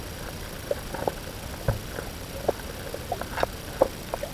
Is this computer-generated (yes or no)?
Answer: no